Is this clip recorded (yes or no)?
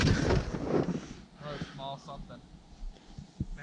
yes